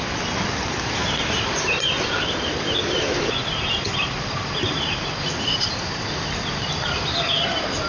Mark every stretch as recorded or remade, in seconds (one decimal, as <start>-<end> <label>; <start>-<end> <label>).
0.0-7.9 recorded